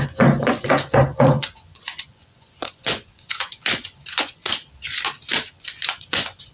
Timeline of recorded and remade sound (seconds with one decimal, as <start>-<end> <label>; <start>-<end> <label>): 0.0-4.4 remade; 4.4-5.5 recorded; 5.5-6.5 remade